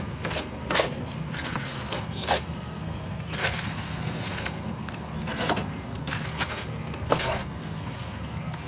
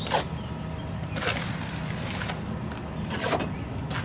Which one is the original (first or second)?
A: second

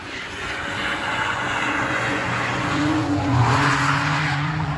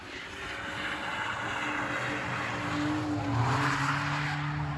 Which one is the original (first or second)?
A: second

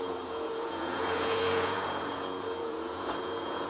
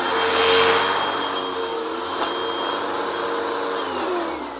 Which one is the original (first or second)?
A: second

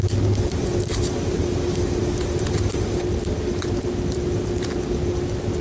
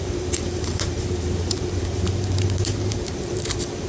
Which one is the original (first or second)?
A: first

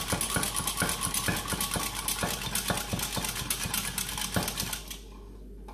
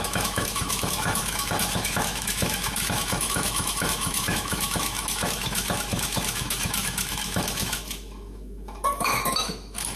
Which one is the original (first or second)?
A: first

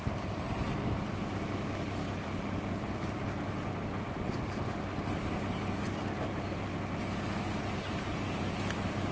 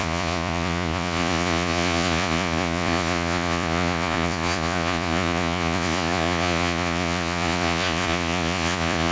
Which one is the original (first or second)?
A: first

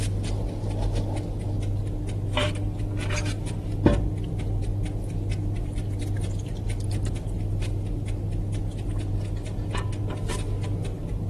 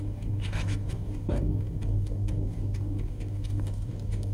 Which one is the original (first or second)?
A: first